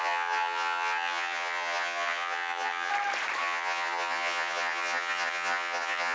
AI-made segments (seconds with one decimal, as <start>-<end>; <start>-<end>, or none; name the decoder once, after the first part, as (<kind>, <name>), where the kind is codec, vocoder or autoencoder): 0.0-2.9 (vocoder, HiFi-GAN); 3.4-6.1